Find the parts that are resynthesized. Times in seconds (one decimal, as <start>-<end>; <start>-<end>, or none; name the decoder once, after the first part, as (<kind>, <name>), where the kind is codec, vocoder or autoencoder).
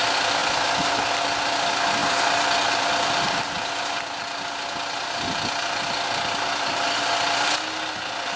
none